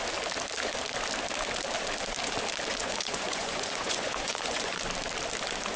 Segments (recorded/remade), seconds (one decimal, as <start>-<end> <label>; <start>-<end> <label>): 0.0-2.8 recorded; 2.8-4.8 remade; 4.8-5.8 recorded